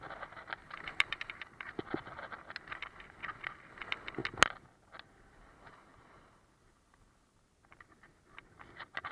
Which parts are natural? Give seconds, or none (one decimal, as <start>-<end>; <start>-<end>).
0.0-0.6; 1.8-9.1